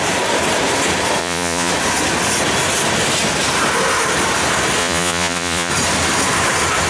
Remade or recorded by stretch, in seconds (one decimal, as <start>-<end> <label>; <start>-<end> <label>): 0.0-1.2 recorded; 1.2-1.7 remade; 1.7-4.8 recorded; 4.8-5.7 remade; 5.7-6.9 recorded